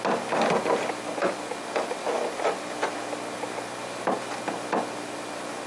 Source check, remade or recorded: recorded